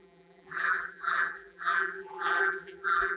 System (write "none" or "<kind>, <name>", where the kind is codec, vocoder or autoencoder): vocoder, BigVGAN v2